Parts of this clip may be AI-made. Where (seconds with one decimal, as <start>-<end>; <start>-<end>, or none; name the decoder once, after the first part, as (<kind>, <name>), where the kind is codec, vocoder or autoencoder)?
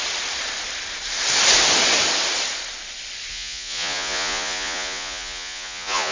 3.3-6.1 (vocoder, Vocos)